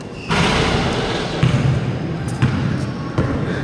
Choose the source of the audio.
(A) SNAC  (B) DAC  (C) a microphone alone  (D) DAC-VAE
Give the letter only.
C